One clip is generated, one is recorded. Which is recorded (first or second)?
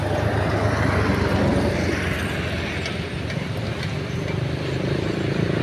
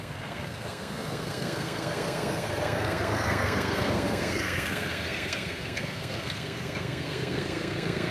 first